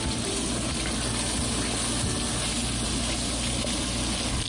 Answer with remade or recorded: recorded